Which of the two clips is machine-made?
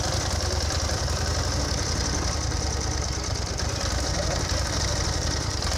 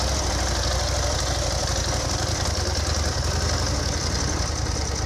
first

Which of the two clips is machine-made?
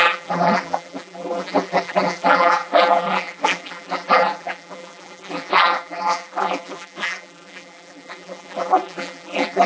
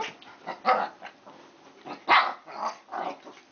first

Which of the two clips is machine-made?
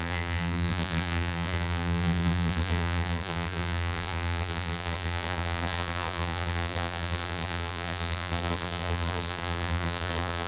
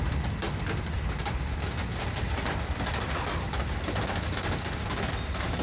first